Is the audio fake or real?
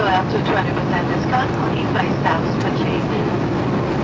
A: real